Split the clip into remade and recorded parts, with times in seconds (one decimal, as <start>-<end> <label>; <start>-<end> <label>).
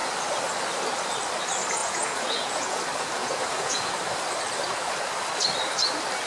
0.0-1.8 recorded; 1.8-2.8 remade; 2.8-3.2 recorded; 3.2-3.9 remade; 3.9-6.3 recorded